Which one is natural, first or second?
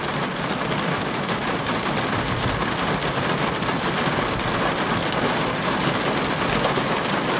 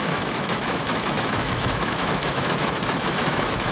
first